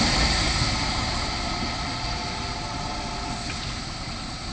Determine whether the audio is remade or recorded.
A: recorded